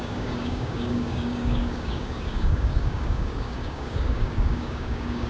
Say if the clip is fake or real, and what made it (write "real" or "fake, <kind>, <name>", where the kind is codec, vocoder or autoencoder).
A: fake, codec, DAC